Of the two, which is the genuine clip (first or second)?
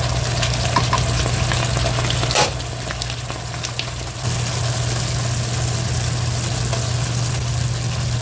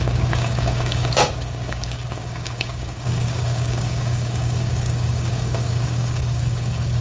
first